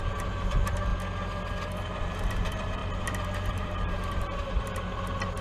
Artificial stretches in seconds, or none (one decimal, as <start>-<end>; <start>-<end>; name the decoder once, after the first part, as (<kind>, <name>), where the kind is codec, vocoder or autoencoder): 0.0-0.9 (vocoder, BigVGAN v2); 2.0-5.4